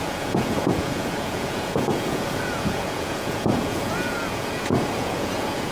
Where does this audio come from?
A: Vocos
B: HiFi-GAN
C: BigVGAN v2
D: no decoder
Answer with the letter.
A